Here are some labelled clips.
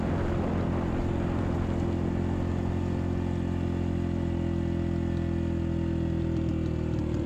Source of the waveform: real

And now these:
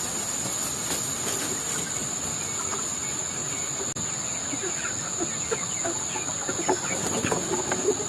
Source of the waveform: real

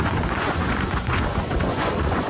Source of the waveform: fake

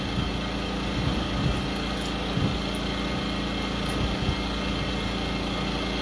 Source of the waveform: real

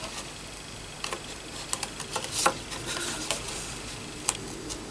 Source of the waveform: real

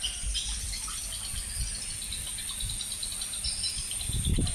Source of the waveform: real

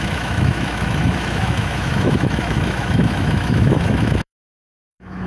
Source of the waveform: fake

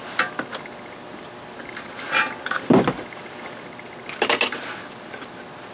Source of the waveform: real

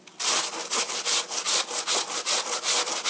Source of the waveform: real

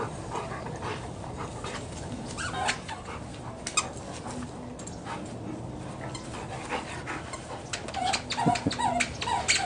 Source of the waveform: real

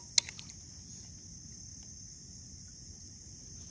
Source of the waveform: real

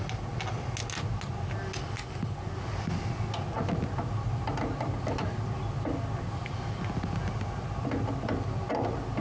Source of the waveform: real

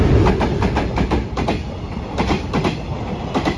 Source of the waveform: real